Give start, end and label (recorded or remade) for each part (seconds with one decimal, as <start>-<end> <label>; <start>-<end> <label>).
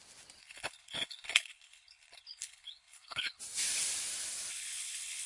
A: 0.0-0.4 recorded; 0.4-3.4 remade; 3.4-4.5 recorded; 4.5-5.3 remade